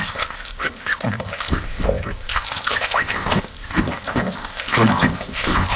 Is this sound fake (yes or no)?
yes